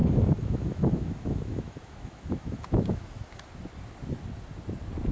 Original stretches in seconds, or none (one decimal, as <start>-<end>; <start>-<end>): 3.1-5.1